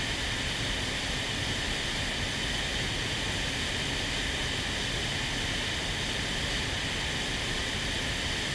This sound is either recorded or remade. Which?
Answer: recorded